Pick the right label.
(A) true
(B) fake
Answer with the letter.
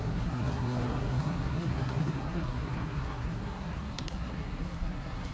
B